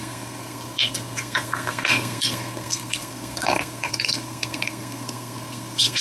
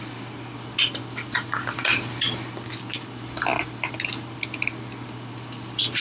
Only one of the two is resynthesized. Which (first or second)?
first